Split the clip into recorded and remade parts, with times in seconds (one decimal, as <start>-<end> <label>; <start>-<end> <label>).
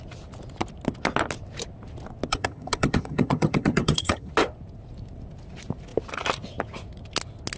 0.0-2.3 recorded; 2.3-4.3 remade; 4.3-7.6 recorded